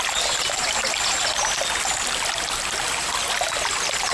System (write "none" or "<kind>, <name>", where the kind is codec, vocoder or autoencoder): none